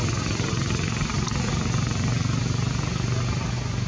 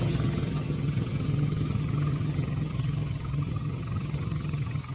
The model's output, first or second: second